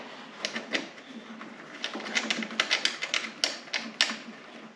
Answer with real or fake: real